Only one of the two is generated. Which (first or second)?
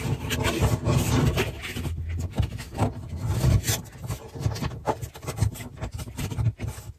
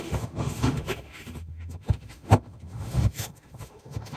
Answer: second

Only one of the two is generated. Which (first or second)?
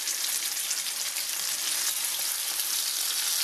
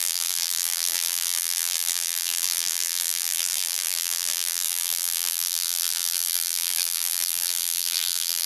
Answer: second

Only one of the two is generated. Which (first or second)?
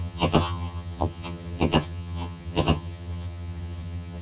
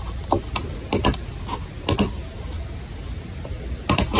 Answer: first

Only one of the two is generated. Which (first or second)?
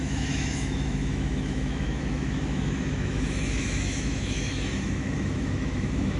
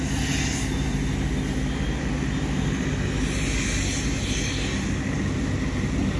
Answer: first